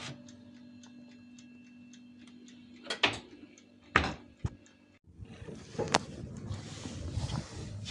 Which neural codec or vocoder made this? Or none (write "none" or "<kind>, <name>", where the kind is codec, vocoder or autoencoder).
none